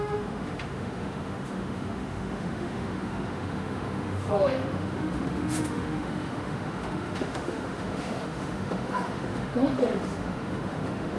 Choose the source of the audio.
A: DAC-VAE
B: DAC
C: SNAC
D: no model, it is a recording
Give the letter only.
A